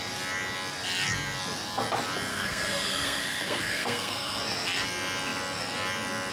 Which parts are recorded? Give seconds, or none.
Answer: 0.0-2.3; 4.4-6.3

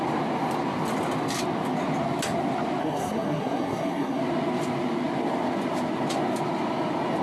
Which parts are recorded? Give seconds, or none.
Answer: 0.0-2.8; 4.2-7.2